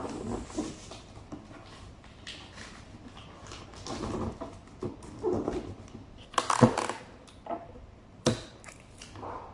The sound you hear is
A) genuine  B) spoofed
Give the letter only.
A